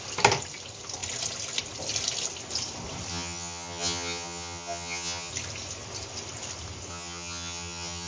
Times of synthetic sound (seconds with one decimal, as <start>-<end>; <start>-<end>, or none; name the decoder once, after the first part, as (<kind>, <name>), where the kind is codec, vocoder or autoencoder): 3.1-5.3 (vocoder, HiFi-GAN); 6.9-8.1